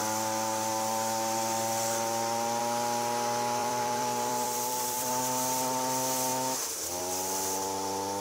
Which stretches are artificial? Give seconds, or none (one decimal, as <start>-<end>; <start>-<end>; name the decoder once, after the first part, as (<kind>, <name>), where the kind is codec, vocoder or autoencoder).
3.6-5.1 (vocoder, BigVGAN v2)